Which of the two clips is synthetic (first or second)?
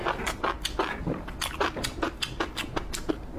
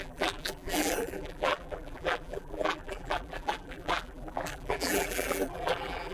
second